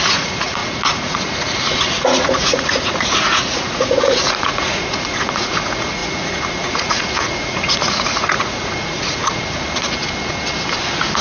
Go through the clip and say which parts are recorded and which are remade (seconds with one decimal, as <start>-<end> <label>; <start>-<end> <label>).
0.0-10.0 remade; 10.0-11.2 recorded